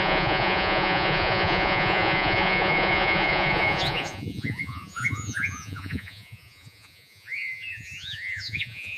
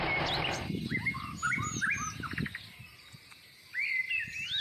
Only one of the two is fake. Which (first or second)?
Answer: first